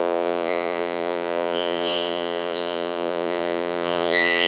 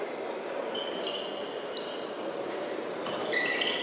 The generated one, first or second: first